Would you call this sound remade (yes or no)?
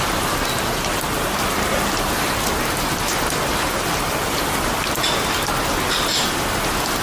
no